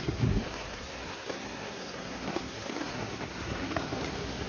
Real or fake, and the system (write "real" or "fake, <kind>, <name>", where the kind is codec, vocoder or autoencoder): fake, codec, SNAC